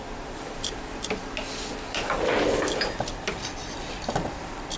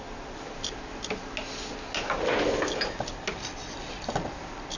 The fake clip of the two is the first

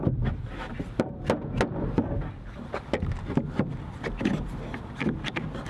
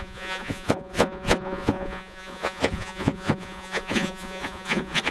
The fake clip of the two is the second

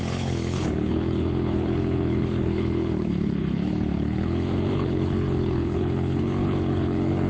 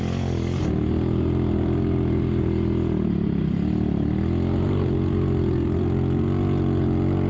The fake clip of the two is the first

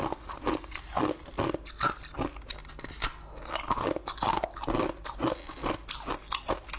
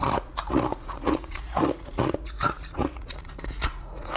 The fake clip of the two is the second